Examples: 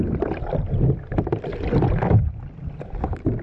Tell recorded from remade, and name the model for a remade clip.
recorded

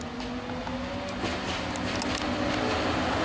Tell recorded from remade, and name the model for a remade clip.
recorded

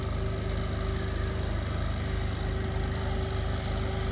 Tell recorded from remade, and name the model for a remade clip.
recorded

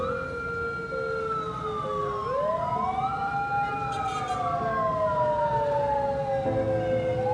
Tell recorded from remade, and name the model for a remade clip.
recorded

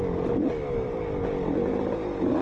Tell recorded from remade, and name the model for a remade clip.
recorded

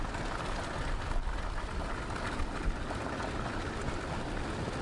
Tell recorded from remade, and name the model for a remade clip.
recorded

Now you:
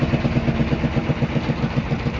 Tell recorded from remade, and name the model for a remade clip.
recorded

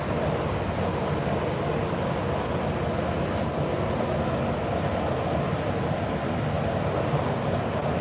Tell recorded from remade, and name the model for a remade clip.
recorded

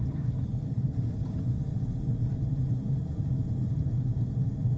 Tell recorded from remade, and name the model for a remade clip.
remade, vocoder, BigVGAN v2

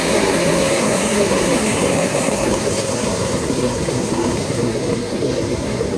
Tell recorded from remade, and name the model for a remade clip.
remade, codec, SNAC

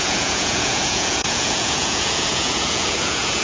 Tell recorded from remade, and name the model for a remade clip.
remade, vocoder, Vocos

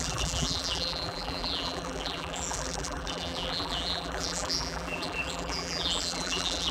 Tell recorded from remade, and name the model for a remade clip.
remade, vocoder, BigVGAN v2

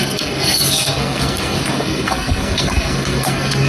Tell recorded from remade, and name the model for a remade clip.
remade, codec, SNAC